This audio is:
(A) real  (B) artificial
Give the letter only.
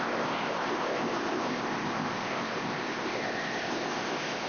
B